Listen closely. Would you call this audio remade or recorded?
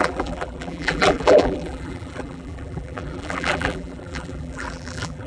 remade